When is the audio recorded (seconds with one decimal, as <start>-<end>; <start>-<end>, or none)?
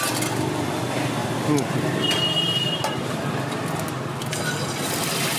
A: 0.0-5.4